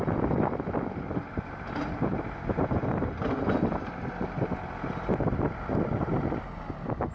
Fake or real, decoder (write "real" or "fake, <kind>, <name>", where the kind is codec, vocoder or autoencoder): real